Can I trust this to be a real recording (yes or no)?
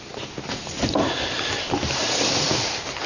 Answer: yes